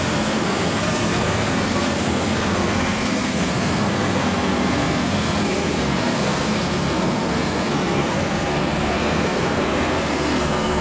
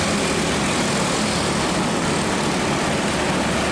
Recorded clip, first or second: second